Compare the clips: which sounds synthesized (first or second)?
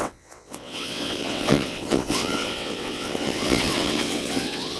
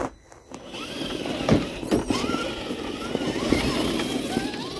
first